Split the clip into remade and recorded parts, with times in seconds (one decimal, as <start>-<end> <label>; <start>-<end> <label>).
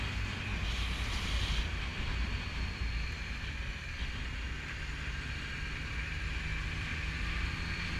0.0-8.0 recorded